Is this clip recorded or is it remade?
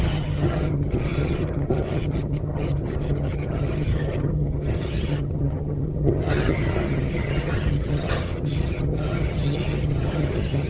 remade